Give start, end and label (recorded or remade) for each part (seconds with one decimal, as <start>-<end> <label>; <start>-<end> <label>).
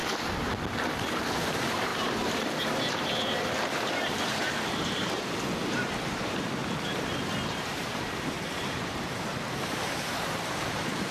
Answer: 0.0-0.9 recorded; 0.9-6.6 remade; 6.6-7.6 recorded; 7.6-11.1 remade